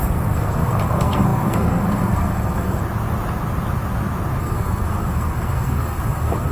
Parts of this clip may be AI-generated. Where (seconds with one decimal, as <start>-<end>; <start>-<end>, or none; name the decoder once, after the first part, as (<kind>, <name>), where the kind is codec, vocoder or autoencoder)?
0.0-2.8 (codec, SNAC); 4.4-6.5